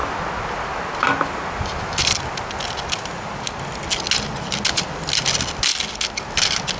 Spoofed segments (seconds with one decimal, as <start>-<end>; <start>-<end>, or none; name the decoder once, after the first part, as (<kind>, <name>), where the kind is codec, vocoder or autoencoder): none